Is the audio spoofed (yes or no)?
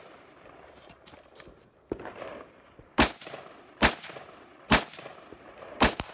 yes